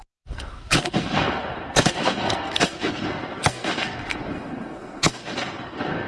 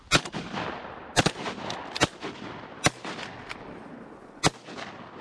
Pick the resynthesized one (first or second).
first